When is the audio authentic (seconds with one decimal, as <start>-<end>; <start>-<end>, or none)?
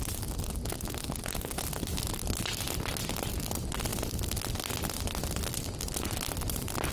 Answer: 0.0-6.9